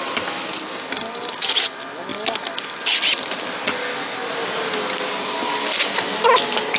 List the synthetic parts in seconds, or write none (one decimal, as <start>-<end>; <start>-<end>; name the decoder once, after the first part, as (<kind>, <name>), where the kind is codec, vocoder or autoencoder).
none